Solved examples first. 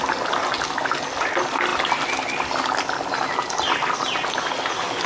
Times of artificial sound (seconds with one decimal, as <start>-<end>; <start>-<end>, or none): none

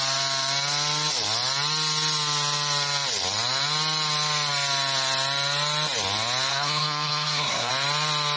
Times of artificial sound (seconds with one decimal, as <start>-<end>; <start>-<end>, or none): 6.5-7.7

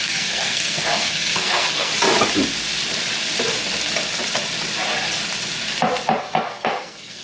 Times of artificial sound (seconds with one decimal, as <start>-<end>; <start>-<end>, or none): 0.0-1.9; 6.2-7.2